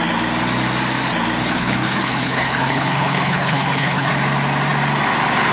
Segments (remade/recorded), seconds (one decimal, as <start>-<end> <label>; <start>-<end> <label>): 0.0-1.4 recorded; 1.4-4.1 remade; 4.1-5.5 recorded